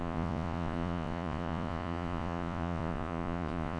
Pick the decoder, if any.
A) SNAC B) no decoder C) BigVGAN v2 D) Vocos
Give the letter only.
D